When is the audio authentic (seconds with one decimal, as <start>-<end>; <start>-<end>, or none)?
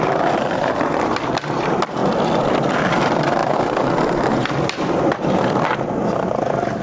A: 0.0-6.8